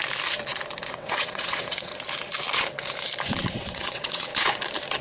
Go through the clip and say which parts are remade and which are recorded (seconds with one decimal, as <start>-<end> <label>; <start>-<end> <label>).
0.0-0.9 recorded; 0.9-1.9 remade; 1.9-3.3 recorded; 3.3-4.3 remade; 4.3-5.0 recorded